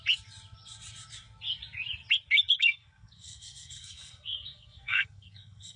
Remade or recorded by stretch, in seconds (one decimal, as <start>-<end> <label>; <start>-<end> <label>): 0.0-2.6 recorded; 2.6-5.8 remade